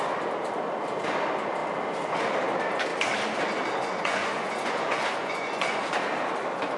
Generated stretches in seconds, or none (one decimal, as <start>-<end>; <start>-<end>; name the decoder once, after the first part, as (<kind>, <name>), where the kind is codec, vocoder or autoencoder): 3.8-5.9 (vocoder, Vocos)